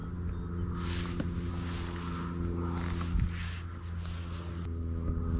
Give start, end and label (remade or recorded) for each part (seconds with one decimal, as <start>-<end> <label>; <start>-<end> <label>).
0.0-5.4 recorded